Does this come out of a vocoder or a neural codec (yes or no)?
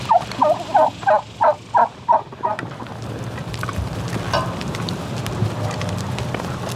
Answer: yes